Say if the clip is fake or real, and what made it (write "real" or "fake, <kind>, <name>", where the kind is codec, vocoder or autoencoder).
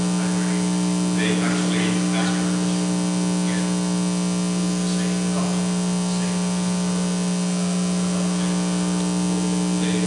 real